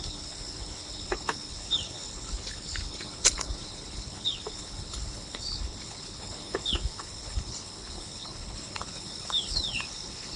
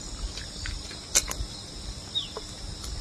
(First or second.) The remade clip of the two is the first